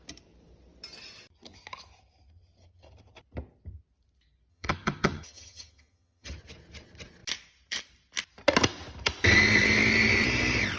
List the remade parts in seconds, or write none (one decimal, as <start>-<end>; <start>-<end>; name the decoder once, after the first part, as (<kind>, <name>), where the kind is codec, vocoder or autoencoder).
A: 4.5-6.4 (vocoder, HiFi-GAN)